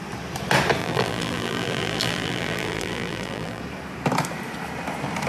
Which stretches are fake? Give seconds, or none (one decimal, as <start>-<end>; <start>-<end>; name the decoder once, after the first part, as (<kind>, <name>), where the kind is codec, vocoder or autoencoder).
0.8-3.6 (vocoder, BigVGAN v2)